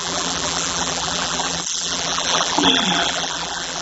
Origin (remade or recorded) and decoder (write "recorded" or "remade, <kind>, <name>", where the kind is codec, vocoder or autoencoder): remade, vocoder, BigVGAN v2